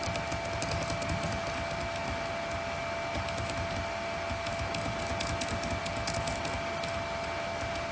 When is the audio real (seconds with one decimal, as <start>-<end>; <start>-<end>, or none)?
0.0-7.9